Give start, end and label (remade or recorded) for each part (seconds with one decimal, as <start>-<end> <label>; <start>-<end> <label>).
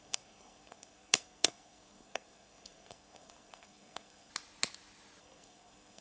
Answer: 0.0-4.3 remade; 4.3-5.2 recorded; 5.2-6.0 remade